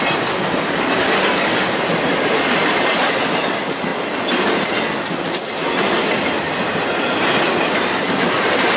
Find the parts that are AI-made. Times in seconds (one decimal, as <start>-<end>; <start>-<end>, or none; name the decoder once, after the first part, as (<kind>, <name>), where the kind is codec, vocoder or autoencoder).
none